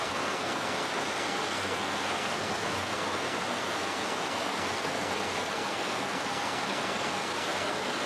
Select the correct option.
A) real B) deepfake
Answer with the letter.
B